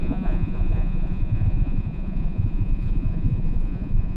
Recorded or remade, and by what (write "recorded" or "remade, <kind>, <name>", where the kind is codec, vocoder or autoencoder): remade, vocoder, Vocos